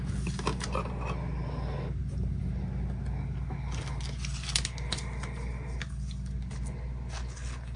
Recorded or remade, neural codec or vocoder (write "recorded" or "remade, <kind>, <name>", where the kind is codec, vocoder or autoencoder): recorded